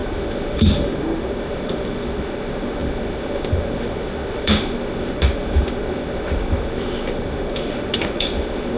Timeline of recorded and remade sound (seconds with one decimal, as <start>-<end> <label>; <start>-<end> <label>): 0.0-8.8 remade